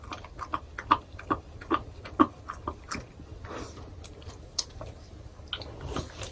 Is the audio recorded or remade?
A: recorded